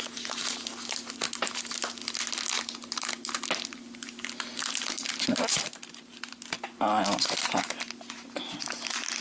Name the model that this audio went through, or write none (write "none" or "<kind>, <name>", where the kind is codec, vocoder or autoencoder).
none